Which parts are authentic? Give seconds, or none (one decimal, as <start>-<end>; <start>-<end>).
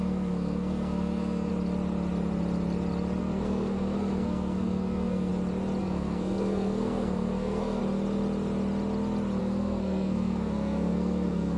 1.5-3.2; 5.3-5.8; 7.8-9.4